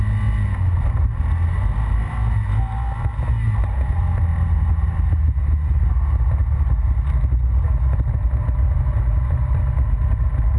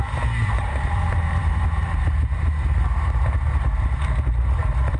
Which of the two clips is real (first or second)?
first